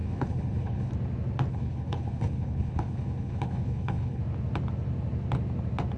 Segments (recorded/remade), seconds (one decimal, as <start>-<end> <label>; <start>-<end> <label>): 0.0-0.9 remade; 0.9-1.5 recorded; 1.5-4.2 remade; 4.2-6.0 recorded